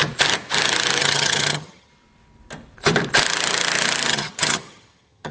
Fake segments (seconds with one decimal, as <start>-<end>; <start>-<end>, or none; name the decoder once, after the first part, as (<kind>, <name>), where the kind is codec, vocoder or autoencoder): 1.0-1.9 (vocoder, HiFi-GAN); 4.1-5.3